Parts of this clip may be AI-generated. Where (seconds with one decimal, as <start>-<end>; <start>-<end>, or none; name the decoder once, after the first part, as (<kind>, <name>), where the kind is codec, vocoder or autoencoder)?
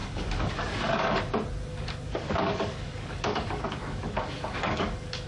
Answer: 0.0-1.2 (codec, DAC); 1.7-5.3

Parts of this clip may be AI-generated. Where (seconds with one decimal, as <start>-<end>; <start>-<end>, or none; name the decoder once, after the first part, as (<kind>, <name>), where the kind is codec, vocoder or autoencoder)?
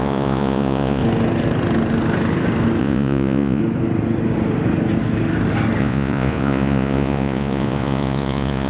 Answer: 0.0-1.0 (vocoder, Vocos); 2.8-3.6; 5.8-8.7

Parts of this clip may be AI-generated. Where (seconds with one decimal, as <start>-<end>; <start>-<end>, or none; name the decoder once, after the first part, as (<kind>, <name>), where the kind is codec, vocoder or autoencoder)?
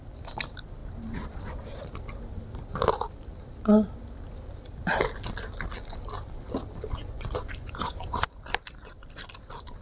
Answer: 7.0-8.4 (vocoder, Vocos)